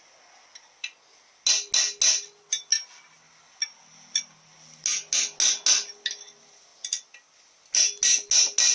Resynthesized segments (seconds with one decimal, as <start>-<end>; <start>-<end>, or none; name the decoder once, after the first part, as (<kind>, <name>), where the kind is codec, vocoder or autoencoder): none